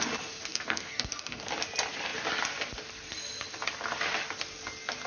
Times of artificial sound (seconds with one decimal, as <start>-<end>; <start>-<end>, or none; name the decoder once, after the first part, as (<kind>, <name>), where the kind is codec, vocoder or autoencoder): 0.5-1.5 (codec, SNAC)